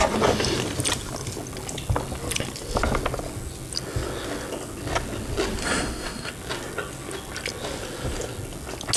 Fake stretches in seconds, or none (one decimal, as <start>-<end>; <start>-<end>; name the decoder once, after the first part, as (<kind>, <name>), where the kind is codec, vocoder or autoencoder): 5.6-6.3 (codec, SNAC)